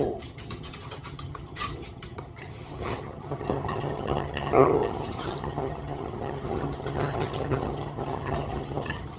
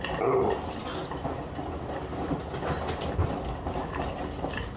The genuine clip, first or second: second